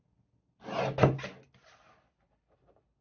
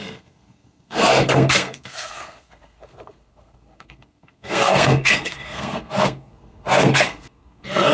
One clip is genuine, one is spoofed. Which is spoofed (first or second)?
second